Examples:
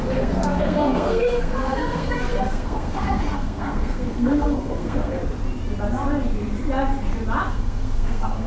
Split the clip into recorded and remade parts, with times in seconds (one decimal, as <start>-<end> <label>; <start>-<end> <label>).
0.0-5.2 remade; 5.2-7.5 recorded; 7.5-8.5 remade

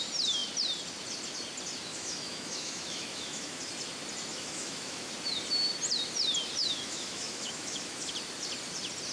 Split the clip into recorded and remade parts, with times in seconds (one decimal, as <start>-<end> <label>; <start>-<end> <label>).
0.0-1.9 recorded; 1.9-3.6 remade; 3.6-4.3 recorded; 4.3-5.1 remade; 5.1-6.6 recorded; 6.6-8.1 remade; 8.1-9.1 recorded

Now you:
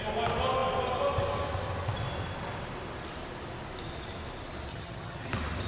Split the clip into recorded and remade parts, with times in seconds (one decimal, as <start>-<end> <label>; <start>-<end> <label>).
0.0-4.7 recorded; 4.7-5.3 remade; 5.3-5.7 recorded